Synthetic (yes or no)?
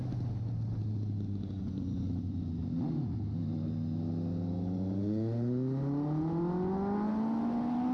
no